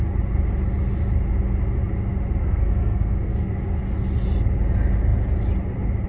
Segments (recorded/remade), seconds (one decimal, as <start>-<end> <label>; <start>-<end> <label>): 0.0-2.4 recorded; 2.4-3.5 remade; 3.5-6.1 recorded